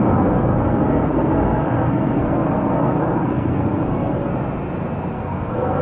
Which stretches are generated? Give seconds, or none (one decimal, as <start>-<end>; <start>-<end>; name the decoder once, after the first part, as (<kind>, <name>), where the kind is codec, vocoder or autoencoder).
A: 0.0-4.3 (codec, SNAC); 5.1-5.8